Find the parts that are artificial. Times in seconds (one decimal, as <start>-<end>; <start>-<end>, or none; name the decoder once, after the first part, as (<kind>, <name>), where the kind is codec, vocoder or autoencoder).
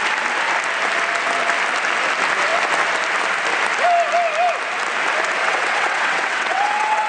5.4-7.1 (vocoder, WaveNeXt)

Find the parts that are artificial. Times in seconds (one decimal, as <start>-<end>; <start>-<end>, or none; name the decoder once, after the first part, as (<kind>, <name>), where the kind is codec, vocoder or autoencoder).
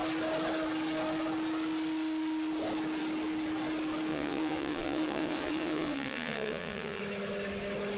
4.1-7.0 (vocoder, WaveNeXt)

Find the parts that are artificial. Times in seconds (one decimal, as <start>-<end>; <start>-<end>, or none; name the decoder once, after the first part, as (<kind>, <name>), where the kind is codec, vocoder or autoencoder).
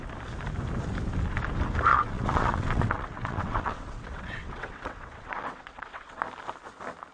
1.9-6.2 (vocoder, WaveNeXt)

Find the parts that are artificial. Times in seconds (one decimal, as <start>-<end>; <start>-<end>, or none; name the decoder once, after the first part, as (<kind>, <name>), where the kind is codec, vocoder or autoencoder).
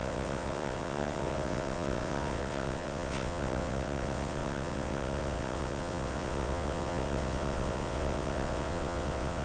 0.0-9.4 (vocoder, WaveNeXt)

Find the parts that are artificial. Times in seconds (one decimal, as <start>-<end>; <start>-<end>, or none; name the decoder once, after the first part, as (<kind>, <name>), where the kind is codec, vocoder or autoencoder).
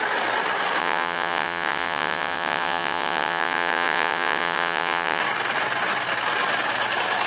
0.8-5.2 (vocoder, WaveNeXt)